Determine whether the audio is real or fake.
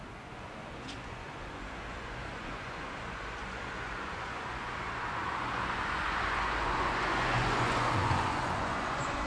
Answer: fake